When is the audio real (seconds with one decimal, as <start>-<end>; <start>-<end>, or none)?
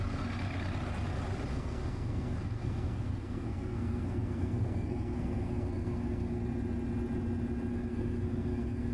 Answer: 0.0-1.5; 6.4-7.7